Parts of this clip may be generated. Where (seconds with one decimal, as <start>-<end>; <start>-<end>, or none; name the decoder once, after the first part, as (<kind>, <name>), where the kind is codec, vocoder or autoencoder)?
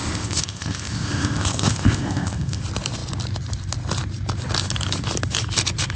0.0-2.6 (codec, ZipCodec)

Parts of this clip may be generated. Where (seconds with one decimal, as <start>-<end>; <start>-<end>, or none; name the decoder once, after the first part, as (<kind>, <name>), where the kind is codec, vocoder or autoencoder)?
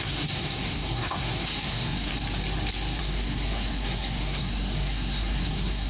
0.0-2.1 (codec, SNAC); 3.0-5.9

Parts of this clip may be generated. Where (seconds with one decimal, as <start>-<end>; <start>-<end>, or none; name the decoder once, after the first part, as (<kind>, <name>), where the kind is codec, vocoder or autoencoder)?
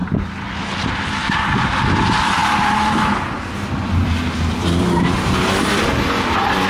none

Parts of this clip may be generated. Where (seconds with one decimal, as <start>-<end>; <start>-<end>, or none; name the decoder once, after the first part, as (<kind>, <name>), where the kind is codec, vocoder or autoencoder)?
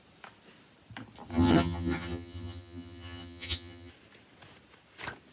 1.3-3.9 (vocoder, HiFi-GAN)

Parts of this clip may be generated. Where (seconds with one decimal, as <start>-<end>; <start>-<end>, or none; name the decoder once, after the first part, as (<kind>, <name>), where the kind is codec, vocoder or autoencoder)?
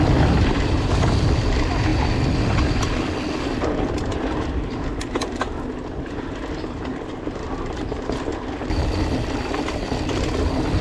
none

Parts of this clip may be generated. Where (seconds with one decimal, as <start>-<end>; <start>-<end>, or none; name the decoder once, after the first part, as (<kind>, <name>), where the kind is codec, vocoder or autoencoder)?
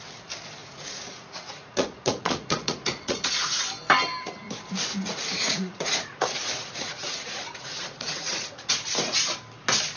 0.6-3.6 (vocoder, Vocos); 4.9-8.7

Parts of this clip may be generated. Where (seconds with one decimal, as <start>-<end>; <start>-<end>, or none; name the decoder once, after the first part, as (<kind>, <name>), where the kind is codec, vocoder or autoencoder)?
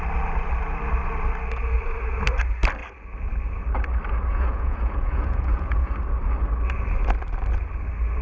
4.3-5.9 (vocoder, Vocos)